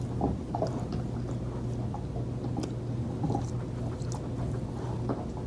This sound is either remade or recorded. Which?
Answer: recorded